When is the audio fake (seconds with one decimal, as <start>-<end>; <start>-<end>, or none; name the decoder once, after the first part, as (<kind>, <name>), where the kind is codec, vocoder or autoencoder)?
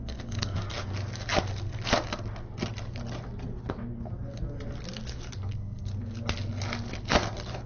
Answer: 0.0-0.9 (codec, SNAC); 5.5-5.9